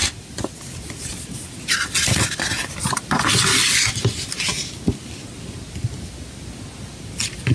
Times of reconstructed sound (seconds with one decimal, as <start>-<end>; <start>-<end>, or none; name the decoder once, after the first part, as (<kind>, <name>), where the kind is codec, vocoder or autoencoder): none